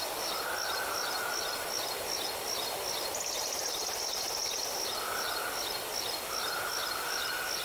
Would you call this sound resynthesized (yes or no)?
no